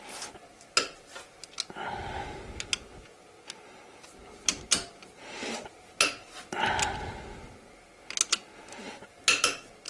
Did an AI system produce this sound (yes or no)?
no